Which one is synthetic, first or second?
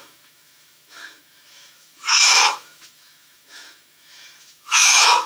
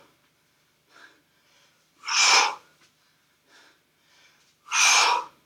first